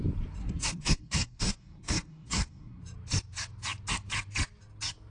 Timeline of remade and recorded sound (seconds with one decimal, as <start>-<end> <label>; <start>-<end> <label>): 0.0-0.4 recorded; 0.4-2.8 remade; 2.8-5.1 recorded